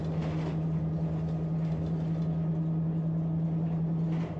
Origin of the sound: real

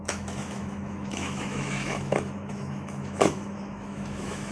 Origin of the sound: fake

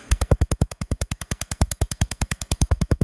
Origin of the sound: fake